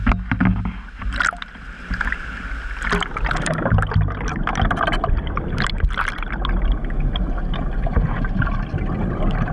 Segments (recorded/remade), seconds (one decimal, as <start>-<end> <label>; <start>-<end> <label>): 0.0-9.5 recorded